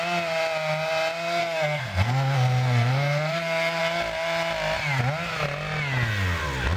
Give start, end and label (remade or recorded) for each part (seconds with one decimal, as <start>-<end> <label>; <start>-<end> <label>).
0.0-1.4 recorded; 1.4-3.8 remade; 3.8-6.8 recorded